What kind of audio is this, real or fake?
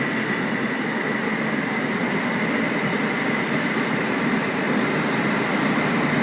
real